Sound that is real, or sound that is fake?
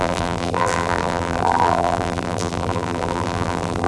fake